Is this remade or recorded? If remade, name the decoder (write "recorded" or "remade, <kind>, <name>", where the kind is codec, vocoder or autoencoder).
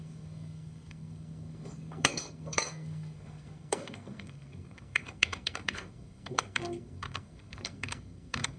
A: remade, codec, SNAC